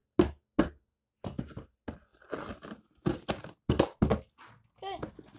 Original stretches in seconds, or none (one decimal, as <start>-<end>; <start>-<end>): 0.0-5.4